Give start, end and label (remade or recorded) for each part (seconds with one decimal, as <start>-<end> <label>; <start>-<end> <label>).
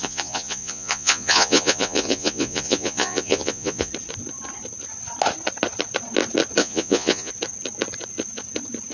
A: 0.0-3.9 remade; 3.9-6.6 recorded; 6.6-7.3 remade; 7.3-8.9 recorded